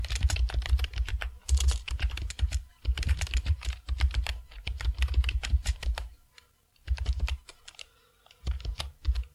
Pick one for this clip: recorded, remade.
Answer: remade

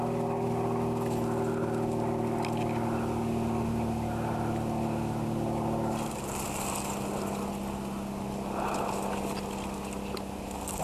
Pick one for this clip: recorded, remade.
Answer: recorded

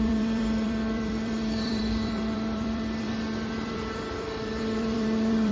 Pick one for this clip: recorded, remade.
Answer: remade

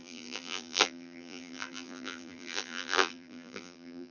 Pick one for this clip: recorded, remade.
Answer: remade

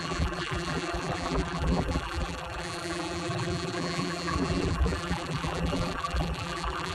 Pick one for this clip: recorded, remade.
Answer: remade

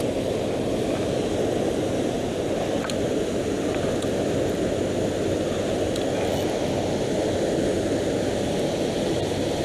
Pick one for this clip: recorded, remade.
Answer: recorded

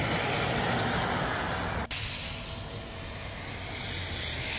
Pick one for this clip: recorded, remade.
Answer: recorded